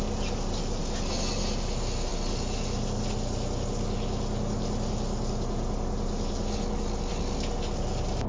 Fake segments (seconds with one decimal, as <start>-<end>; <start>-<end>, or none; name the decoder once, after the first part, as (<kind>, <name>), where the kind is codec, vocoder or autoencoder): none